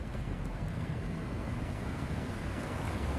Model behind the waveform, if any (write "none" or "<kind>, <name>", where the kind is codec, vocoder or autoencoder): codec, SNAC